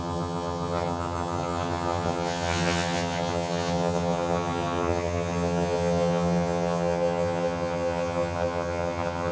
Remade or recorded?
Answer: remade